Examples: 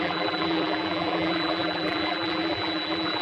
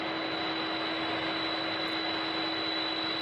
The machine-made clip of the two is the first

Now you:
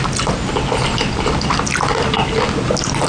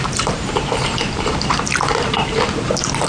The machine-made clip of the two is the second